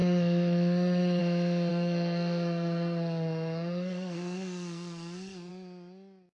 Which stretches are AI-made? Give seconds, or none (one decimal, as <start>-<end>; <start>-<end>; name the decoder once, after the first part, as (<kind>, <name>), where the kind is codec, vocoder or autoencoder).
0.0-1.2 (codec, SNAC); 1.7-5.5